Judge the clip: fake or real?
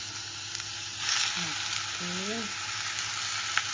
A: real